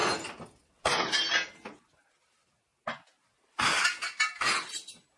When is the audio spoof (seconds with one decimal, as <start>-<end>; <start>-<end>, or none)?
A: none